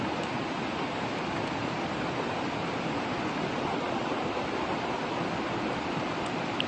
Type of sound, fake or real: real